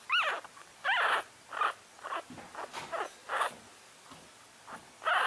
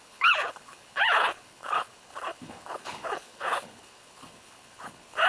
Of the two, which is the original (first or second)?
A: first